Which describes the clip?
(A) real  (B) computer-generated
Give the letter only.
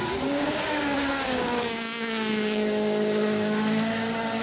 B